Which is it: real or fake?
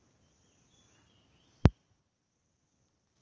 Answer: real